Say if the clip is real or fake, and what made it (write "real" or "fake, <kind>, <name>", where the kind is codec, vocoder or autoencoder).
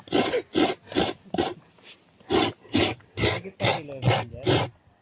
real